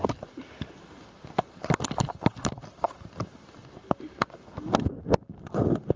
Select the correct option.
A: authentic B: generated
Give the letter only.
A